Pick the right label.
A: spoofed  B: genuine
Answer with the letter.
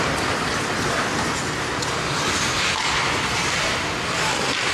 B